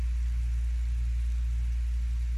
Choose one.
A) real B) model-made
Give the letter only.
A